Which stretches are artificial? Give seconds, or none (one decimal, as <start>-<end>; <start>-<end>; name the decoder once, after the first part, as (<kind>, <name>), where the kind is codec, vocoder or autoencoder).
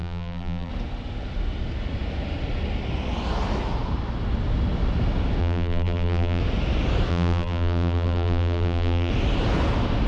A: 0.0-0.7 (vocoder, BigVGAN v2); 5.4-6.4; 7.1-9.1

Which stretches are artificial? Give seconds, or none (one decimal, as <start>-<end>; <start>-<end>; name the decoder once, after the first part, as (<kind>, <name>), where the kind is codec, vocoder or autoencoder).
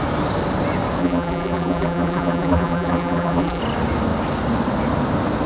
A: 1.0-3.6 (vocoder, BigVGAN v2)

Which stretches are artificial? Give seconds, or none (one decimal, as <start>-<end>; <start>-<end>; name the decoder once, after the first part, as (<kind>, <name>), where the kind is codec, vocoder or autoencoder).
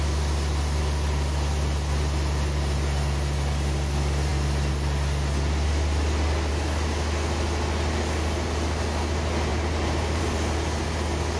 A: 9.5-10.2 (vocoder, BigVGAN v2)